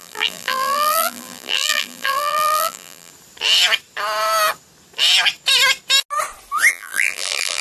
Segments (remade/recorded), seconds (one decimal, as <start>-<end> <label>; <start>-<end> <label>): 0.0-3.1 remade; 3.1-6.7 recorded; 6.7-7.6 remade